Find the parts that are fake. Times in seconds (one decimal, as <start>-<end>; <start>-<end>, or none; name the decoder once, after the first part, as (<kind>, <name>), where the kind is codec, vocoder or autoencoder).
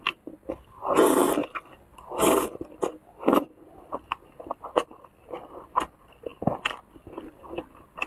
none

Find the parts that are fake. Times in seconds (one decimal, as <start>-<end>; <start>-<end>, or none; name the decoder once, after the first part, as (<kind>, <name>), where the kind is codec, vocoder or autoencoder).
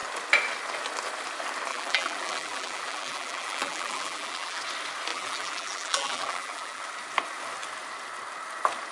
1.7-4.6 (vocoder, BigVGAN v2); 5.1-6.8